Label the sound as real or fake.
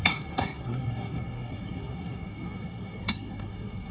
fake